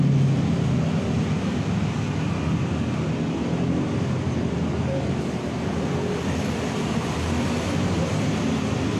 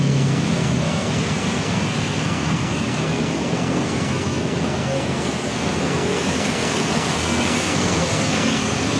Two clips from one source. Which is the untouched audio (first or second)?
first